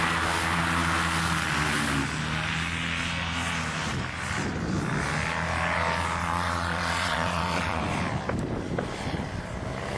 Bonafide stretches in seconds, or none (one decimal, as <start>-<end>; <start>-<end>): 0.0-6.2; 7.8-10.0